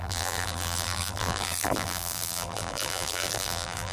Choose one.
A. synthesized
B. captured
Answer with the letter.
A